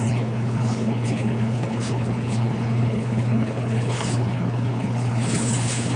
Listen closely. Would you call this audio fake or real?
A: fake